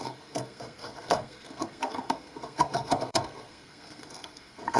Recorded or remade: remade